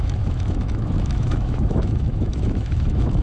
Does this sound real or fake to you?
fake